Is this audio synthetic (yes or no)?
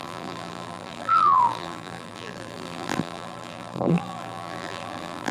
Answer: yes